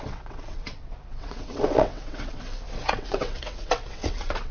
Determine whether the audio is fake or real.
fake